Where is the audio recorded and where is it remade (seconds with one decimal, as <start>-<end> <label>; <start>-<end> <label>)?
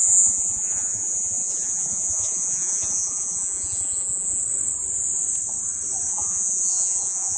0.0-4.4 remade; 4.4-6.1 recorded; 6.1-7.4 remade